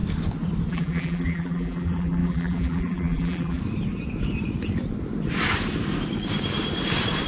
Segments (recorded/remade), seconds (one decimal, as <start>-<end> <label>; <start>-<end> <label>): 0.0-0.7 recorded; 0.7-3.6 remade; 3.6-7.3 recorded